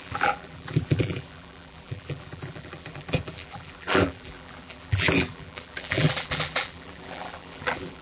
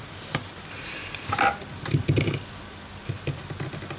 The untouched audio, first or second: second